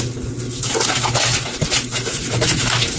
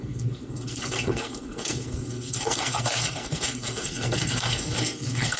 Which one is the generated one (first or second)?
second